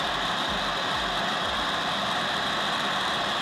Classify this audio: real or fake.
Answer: fake